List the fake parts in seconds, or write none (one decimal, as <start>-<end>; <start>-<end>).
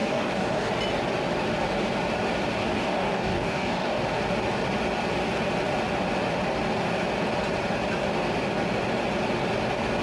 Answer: 0.0-0.7; 2.6-4.0